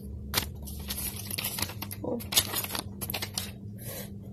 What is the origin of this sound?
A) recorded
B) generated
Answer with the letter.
A